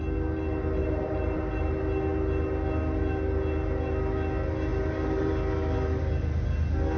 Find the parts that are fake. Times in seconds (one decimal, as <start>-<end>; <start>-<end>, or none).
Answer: 0.8-1.4; 4.7-5.3